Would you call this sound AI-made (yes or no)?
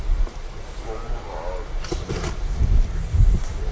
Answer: no